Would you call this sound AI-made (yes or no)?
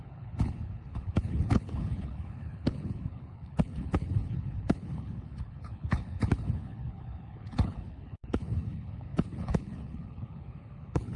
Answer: yes